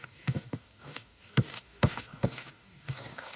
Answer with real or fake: fake